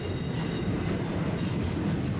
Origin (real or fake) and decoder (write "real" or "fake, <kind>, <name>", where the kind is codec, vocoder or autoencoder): real